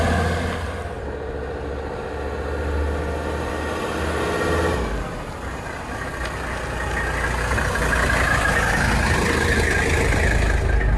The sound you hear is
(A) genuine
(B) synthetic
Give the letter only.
A